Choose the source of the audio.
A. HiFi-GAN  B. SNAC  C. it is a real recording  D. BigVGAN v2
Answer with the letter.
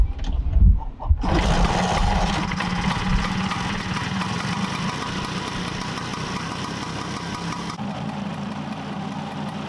C